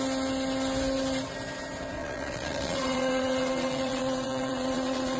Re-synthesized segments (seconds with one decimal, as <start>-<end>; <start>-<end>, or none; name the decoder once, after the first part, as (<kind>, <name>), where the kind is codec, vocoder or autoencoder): 2.0-5.2 (vocoder, Vocos)